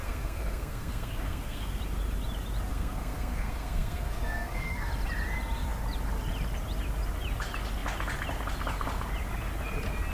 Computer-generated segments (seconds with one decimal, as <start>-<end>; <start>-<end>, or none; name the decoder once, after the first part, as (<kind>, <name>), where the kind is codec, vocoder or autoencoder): 0.0-1.8 (codec, SNAC); 2.7-4.9